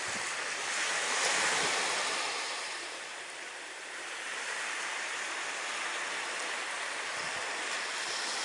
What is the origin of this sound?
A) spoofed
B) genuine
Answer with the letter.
B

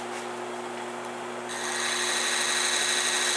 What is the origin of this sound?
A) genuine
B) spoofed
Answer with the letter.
A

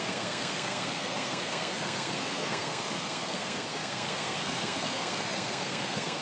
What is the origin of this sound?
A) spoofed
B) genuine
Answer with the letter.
A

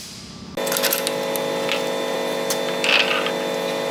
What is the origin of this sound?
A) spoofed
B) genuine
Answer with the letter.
B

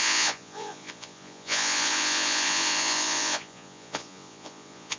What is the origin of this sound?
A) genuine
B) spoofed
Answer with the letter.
B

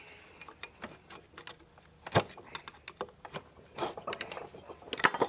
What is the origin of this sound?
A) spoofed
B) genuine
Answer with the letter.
B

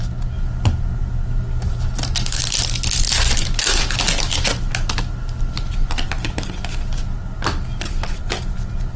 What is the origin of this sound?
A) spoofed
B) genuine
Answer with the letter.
B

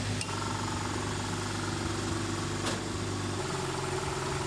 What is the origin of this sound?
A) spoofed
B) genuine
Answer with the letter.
B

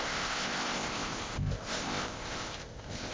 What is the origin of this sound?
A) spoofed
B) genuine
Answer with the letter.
A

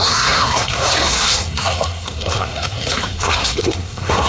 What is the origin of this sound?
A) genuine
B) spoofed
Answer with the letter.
B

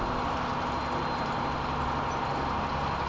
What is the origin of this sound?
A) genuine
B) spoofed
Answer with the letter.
A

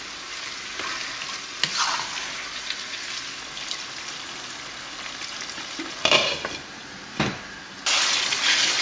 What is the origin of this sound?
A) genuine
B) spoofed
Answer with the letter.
A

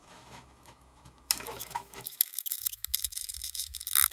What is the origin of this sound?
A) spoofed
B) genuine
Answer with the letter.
A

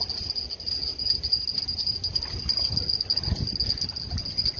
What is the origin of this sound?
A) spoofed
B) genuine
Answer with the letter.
B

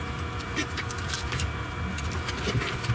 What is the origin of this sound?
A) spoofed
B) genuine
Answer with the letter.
B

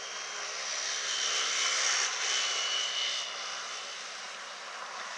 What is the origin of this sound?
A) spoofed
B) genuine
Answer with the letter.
B